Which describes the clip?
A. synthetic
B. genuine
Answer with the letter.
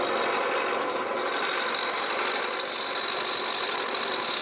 B